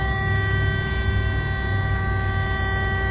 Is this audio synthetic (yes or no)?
no